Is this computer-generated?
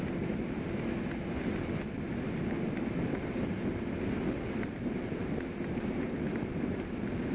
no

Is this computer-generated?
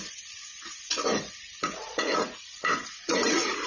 yes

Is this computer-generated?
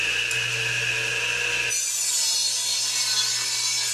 no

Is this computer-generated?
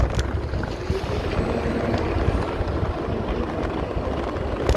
no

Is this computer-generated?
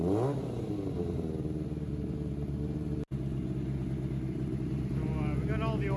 no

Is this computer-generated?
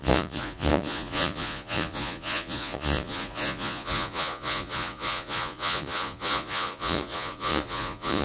yes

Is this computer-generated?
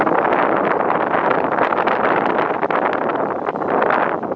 no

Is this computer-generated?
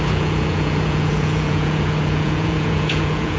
yes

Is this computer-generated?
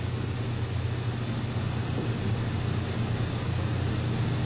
no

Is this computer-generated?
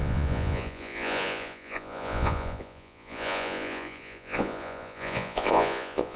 yes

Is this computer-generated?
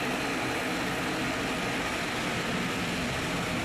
no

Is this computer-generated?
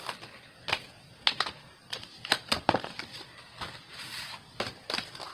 no